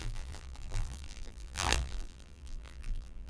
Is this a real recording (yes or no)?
no